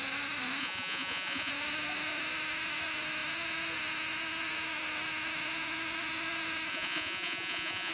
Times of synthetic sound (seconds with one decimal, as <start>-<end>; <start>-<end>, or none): 0.6-1.5; 6.7-7.9